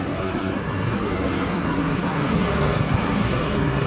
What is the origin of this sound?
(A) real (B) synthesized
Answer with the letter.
B